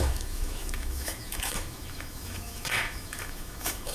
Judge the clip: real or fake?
fake